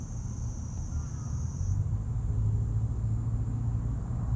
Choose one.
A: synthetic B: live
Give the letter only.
B